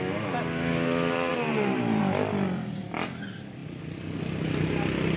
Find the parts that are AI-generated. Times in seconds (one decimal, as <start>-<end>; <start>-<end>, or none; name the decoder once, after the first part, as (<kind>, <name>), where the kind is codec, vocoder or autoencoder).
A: none